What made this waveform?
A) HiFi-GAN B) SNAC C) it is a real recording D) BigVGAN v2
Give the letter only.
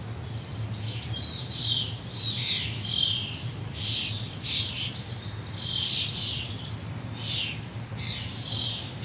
C